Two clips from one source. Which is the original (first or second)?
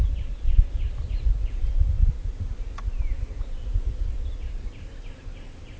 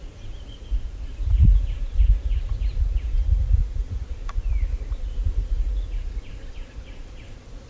first